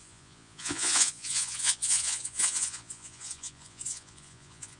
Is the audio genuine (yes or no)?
no